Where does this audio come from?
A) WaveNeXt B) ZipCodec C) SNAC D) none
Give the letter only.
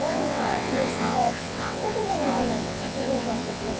A